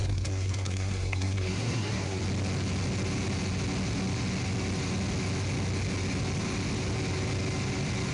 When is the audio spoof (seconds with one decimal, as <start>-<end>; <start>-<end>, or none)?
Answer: 0.0-2.2